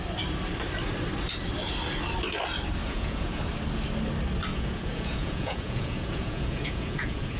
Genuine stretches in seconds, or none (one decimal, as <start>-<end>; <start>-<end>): 0.0-2.8; 3.4-4.5